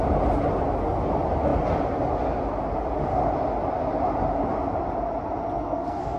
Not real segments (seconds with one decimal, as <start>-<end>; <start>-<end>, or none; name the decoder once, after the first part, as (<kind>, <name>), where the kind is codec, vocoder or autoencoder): 5.6-6.2 (codec, SNAC)